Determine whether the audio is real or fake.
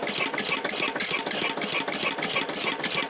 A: real